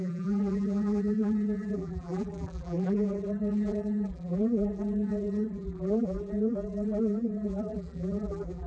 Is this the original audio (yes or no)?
no